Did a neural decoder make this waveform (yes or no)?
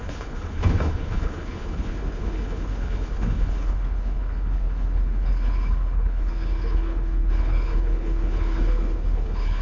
yes